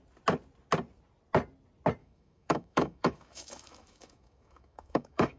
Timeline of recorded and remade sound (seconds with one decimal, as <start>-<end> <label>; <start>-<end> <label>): 0.0-2.0 recorded; 2.0-5.4 remade